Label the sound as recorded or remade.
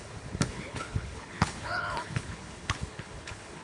remade